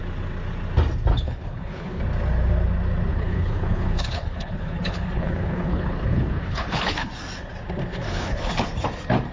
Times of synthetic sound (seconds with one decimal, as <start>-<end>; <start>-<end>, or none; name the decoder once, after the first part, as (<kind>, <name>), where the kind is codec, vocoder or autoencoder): 1.1-2.0 (codec, HILCodec); 3.1-7.1; 7.9-8.5